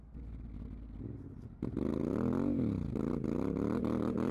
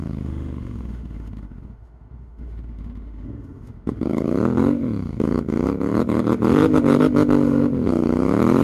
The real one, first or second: first